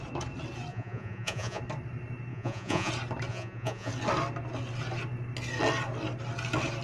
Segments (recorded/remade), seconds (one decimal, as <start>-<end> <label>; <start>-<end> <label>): 0.0-0.7 recorded; 0.7-1.6 remade; 1.6-2.3 recorded; 2.3-2.9 remade; 2.9-3.3 recorded; 3.3-3.9 remade; 3.9-6.8 recorded